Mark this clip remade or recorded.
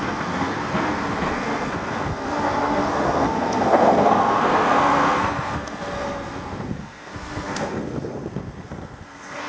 remade